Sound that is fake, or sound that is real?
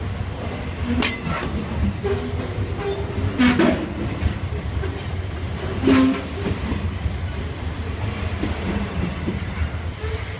real